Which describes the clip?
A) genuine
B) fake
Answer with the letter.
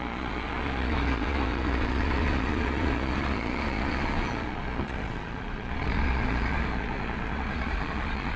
B